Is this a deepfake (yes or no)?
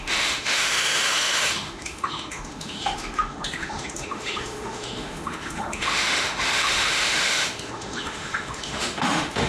yes